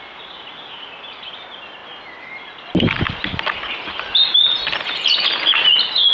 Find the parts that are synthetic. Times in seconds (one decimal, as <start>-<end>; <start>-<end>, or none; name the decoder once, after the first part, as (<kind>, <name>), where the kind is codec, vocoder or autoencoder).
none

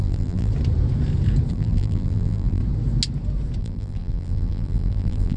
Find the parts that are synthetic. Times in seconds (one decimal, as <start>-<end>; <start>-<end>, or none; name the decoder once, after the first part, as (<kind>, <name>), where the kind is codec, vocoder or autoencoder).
0.0-0.5 (vocoder, BigVGAN v2); 1.5-2.6; 3.6-5.4

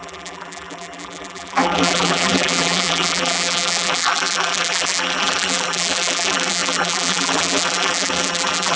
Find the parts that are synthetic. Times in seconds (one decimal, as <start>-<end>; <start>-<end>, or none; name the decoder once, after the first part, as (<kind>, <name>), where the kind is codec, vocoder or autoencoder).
0.0-8.8 (vocoder, BigVGAN v2)

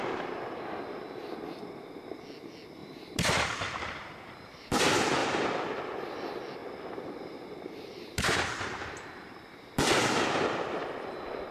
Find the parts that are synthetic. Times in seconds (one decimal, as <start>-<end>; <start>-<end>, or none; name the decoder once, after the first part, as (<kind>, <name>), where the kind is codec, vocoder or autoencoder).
2.8-4.8 (vocoder, BigVGAN v2); 5.2-5.7; 6.6-9.8